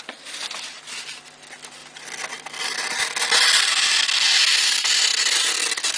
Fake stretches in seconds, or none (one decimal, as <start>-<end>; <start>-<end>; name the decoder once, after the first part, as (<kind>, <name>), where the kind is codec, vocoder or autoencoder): 1.8-3.7 (vocoder, BigVGAN v2); 5.1-6.0